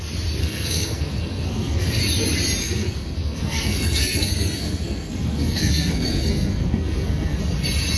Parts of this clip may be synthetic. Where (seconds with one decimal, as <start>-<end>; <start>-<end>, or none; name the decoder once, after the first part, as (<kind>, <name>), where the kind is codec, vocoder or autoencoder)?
0.4-2.0 (codec, SNAC); 2.6-7.4